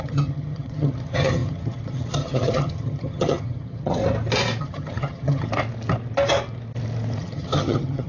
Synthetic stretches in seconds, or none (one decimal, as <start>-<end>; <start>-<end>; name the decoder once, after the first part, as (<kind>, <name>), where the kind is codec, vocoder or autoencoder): 0.0-4.0 (vocoder, HiFi-GAN); 4.6-5.5; 7.2-8.1